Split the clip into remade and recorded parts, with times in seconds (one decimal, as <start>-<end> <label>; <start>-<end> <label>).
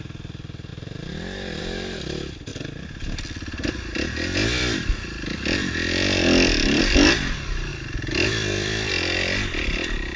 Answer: 0.0-0.7 recorded; 0.7-1.6 remade; 1.6-2.5 recorded; 2.5-6.8 remade; 6.8-7.7 recorded; 7.7-8.9 remade; 8.9-10.2 recorded